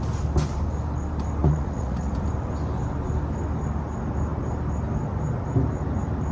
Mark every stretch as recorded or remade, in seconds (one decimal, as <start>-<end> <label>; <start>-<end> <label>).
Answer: 0.0-1.4 recorded; 1.4-2.2 remade; 2.2-6.3 recorded